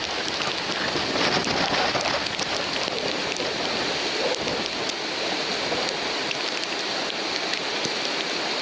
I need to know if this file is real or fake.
real